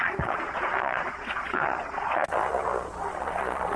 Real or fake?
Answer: fake